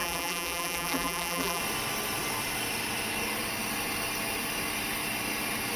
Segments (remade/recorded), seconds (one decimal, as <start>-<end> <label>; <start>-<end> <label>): 0.0-1.6 remade; 1.6-5.8 recorded